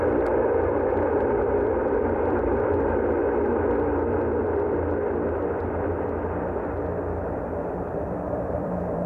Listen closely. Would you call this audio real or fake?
fake